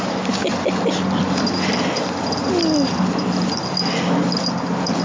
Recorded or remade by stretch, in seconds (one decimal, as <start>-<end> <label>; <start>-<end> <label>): 0.0-5.0 recorded